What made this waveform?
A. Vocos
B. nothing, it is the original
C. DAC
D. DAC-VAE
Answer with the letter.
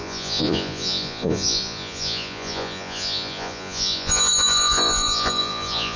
A